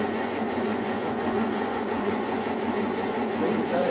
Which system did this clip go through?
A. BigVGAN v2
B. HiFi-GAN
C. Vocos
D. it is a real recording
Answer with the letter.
C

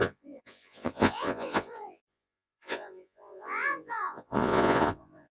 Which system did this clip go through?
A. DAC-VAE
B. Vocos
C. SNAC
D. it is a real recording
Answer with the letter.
B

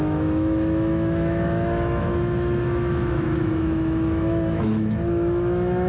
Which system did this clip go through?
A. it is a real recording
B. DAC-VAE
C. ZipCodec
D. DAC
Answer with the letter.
B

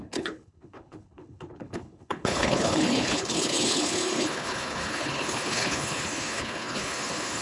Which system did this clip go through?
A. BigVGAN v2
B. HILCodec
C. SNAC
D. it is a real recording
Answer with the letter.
B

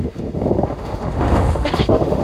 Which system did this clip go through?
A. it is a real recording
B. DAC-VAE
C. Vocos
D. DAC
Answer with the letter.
B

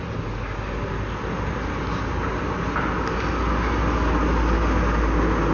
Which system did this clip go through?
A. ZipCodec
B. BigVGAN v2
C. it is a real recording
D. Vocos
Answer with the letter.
C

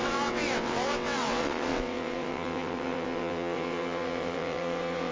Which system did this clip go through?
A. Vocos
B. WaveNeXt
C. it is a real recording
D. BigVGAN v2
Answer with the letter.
B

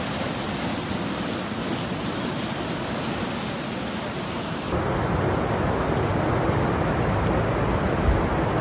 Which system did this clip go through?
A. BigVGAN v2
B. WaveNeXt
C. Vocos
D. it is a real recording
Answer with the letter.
D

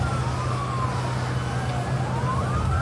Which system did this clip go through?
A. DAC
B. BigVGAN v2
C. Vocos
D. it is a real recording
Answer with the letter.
D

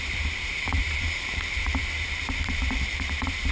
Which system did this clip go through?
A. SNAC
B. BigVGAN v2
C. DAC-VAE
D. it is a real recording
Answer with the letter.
B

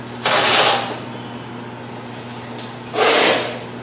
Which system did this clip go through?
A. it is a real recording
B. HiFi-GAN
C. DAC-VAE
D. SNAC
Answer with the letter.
A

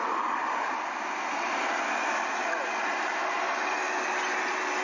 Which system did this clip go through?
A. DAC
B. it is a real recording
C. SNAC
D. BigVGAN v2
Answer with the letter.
B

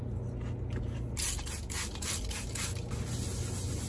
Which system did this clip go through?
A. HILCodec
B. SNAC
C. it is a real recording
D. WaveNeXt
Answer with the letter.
C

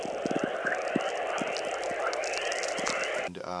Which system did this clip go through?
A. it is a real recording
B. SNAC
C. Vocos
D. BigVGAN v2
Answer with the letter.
A